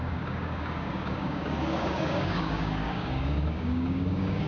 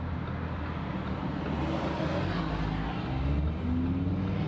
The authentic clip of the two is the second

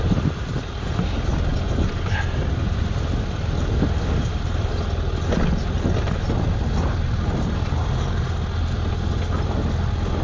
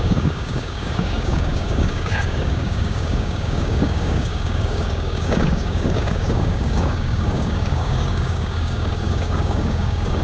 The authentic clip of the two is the first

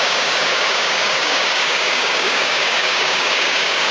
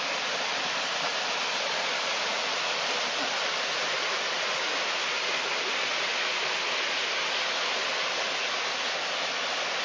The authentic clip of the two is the second